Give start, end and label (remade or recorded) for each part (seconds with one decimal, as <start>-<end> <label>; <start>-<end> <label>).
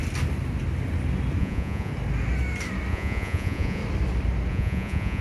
0.0-1.4 recorded; 1.4-1.9 remade; 1.9-2.9 recorded; 2.9-3.8 remade; 3.8-4.5 recorded; 4.5-5.2 remade